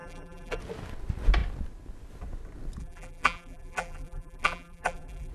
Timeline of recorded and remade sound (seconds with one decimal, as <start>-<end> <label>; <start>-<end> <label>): 0.0-0.6 remade; 0.6-2.8 recorded; 2.8-5.3 remade